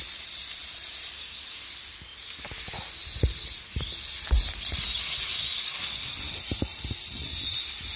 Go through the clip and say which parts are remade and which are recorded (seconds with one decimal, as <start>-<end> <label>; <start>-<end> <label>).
0.0-8.0 recorded